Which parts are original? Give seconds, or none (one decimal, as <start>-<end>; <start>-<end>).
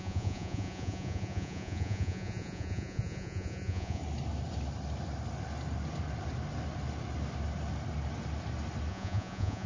4.0-8.9